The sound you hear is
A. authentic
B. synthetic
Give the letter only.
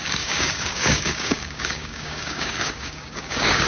B